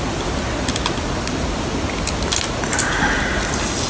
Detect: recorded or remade recorded